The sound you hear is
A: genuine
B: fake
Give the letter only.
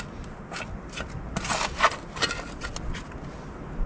A